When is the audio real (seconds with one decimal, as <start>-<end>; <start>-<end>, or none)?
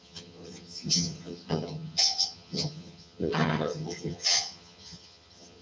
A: none